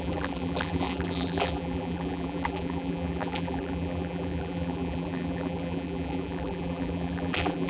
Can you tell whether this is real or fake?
fake